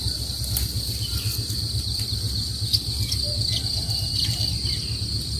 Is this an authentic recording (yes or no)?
yes